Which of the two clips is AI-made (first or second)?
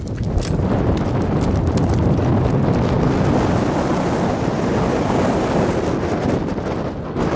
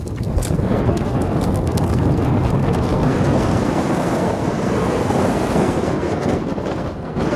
second